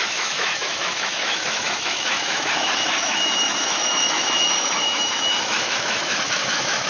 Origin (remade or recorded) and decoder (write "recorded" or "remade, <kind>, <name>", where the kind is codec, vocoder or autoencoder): remade, autoencoder, DAC-VAE